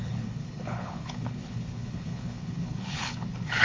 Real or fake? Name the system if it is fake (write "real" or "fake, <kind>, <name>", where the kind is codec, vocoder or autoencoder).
fake, codec, HILCodec